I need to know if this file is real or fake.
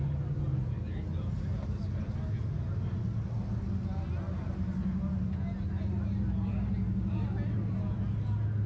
real